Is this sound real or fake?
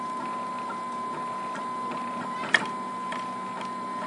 real